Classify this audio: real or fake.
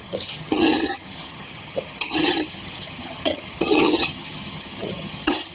fake